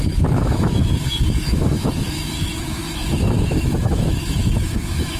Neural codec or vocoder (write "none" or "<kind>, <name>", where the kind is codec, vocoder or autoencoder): autoencoder, DAC-VAE